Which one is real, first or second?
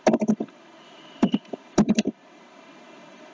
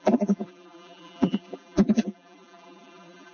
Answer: first